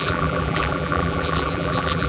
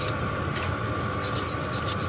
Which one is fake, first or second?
first